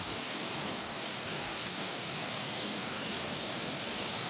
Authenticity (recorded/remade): remade